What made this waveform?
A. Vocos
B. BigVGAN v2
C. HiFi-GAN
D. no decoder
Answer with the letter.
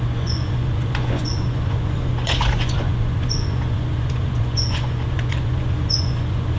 A